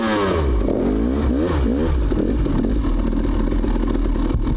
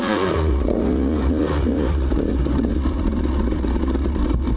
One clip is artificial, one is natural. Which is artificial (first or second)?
second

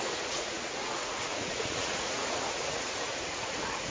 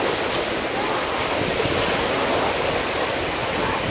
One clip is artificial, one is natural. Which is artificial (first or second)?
first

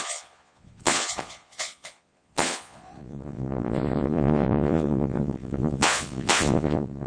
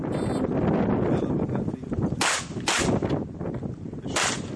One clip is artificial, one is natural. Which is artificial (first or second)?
first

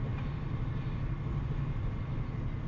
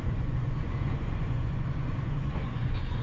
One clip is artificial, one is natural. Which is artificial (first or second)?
second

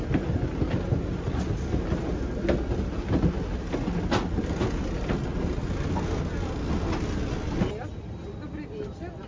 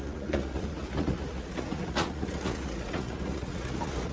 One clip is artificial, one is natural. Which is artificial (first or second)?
second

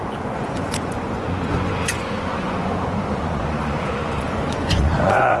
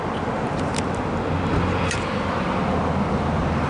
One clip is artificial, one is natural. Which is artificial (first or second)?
first